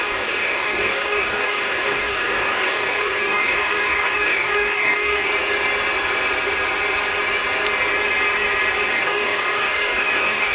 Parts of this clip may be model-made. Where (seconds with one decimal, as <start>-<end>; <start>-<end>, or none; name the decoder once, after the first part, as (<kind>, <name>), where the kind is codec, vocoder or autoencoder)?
0.0-5.3 (codec, DAC); 8.9-10.5